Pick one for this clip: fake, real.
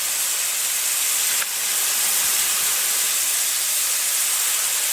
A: real